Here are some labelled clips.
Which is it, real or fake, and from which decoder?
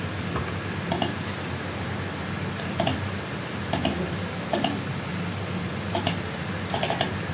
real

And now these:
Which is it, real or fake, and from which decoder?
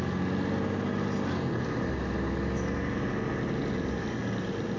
real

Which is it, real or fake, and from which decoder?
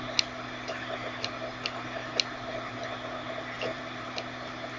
real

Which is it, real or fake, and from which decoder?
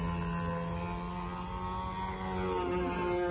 real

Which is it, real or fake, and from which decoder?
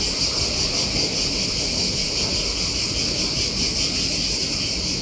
real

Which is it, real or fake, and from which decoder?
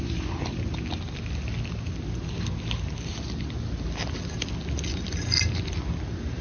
real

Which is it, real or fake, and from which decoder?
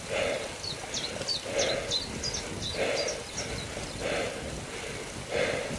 real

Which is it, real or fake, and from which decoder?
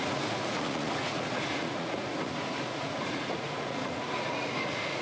fake, vocoder, Vocos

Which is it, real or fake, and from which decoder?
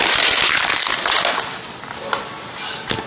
real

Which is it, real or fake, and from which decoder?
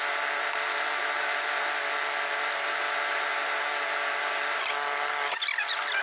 real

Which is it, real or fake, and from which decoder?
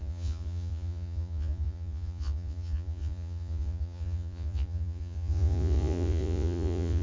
fake, vocoder, Vocos